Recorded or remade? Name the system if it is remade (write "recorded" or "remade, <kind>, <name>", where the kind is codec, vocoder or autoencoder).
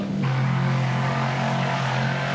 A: remade, codec, DAC